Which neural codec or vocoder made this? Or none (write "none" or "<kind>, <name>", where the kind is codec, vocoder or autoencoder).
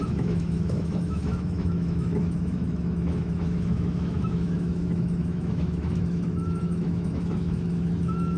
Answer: autoencoder, DAC-VAE